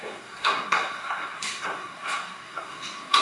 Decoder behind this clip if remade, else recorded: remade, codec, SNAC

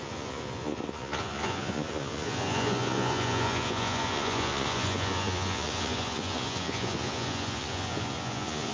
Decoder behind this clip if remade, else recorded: remade, vocoder, Vocos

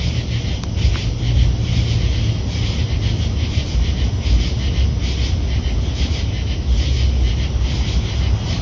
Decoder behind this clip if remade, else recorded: recorded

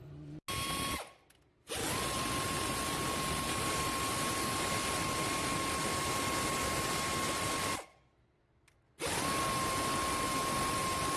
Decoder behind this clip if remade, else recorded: recorded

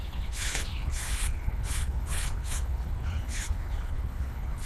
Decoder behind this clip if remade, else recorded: remade, codec, HILCodec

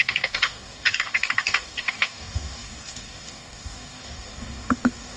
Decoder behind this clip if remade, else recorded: remade, codec, DAC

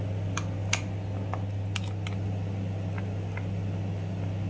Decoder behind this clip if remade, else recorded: recorded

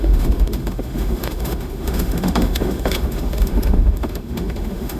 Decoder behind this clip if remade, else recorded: remade, autoencoder, DAC-VAE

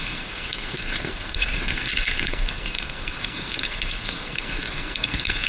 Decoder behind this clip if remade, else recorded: remade, codec, SNAC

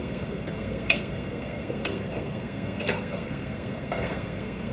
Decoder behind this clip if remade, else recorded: remade, codec, SNAC